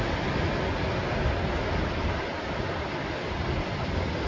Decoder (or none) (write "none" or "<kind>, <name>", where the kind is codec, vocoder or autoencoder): none